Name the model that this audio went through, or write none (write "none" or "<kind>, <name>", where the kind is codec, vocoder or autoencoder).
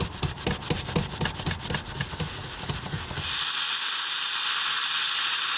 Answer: none